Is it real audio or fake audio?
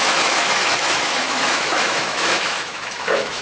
fake